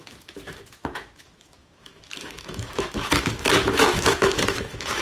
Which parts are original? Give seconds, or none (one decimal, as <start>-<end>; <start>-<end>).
none